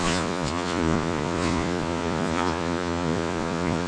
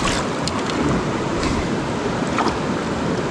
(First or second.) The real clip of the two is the second